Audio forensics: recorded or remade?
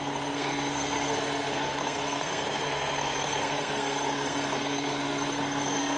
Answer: remade